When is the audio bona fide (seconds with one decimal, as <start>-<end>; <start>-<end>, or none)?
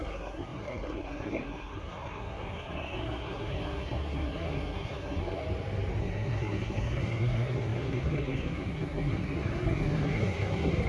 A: 5.4-6.0